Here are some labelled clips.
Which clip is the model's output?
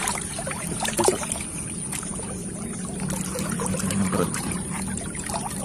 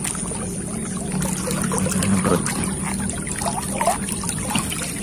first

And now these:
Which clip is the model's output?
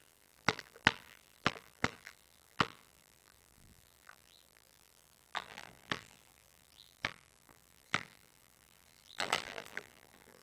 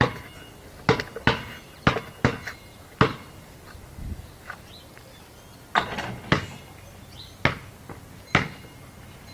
first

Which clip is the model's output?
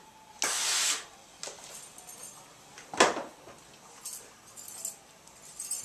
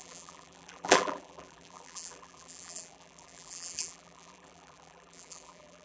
second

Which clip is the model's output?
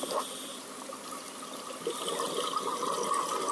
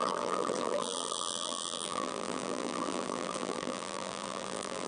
second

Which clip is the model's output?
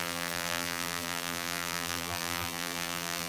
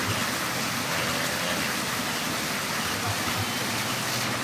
first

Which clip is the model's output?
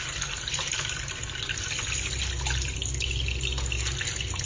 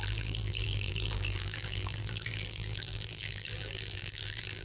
second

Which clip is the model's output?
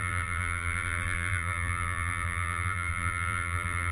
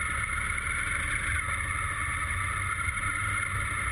first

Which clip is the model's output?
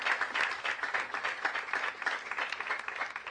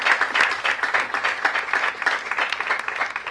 first